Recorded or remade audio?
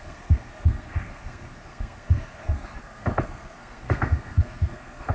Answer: remade